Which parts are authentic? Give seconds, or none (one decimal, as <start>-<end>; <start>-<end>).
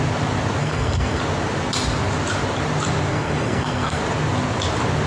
0.0-0.6; 1.2-3.1; 4.0-5.1